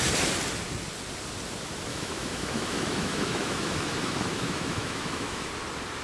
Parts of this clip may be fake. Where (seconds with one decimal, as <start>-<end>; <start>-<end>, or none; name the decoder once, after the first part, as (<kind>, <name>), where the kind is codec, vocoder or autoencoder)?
1.9-5.5 (autoencoder, DAC-VAE)